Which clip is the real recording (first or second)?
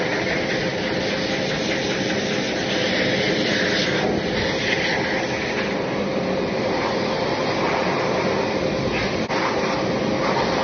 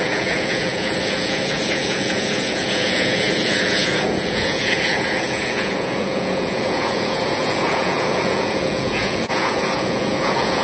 first